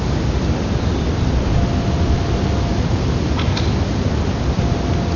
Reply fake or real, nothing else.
real